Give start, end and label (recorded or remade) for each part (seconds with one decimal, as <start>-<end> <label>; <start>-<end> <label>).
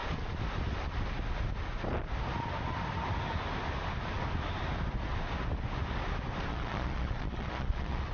0.0-6.5 recorded; 6.5-8.1 remade